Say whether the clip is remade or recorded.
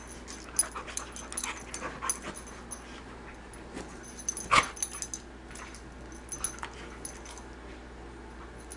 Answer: recorded